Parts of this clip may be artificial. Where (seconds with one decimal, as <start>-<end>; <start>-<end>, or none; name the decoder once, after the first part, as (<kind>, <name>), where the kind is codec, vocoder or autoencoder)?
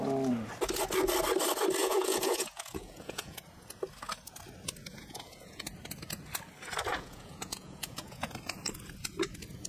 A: 1.8-3.4 (vocoder, Vocos); 4.9-5.7; 6.9-8.3